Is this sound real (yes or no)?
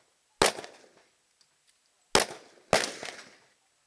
yes